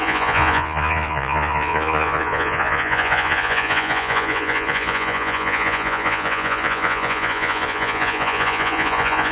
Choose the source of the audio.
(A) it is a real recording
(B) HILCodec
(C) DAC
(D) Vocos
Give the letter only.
D